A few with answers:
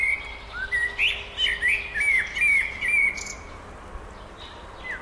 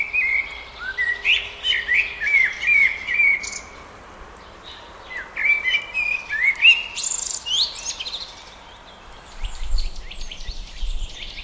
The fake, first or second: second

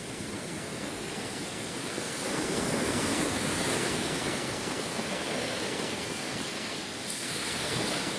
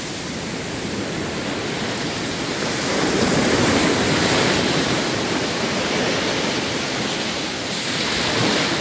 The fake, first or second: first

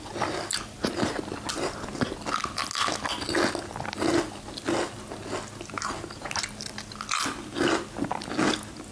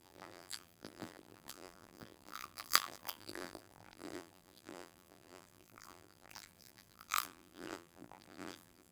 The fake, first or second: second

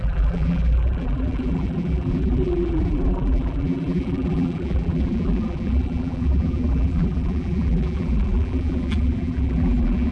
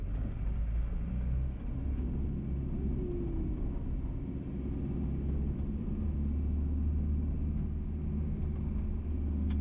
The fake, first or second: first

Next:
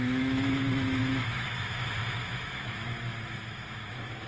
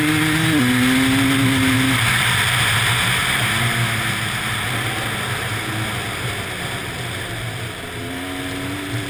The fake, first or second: first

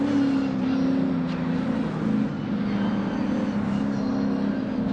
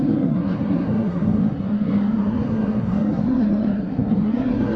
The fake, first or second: second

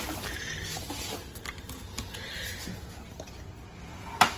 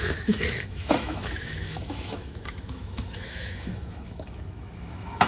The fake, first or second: second